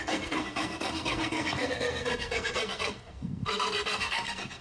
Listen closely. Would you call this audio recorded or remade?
remade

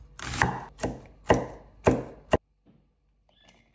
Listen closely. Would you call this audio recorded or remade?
recorded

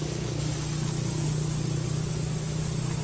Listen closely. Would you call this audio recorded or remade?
recorded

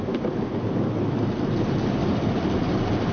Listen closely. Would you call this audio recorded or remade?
recorded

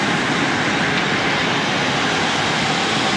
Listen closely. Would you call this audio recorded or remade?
recorded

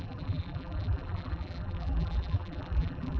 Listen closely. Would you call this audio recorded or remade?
remade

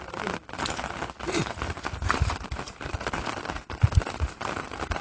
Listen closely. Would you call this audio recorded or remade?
recorded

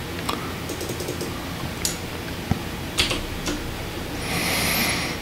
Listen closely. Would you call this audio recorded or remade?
recorded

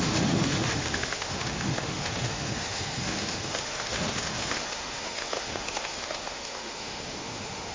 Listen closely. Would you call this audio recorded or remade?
remade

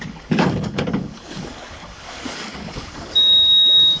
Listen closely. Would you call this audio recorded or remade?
remade